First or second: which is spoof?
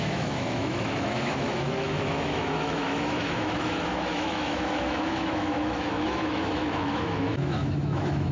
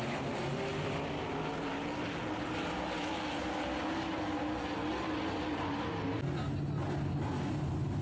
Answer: first